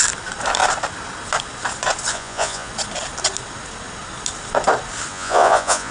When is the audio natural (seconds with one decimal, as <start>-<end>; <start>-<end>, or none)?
0.0-2.1; 2.7-5.1